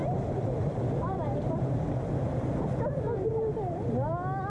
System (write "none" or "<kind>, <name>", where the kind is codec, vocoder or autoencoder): none